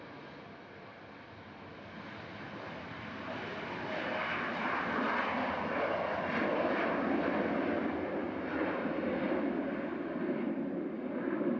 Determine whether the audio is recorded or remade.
recorded